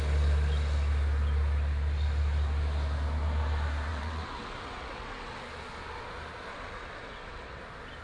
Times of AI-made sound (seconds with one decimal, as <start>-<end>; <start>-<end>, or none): 3.9-5.4; 6.5-7.6